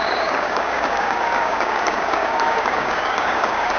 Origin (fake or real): fake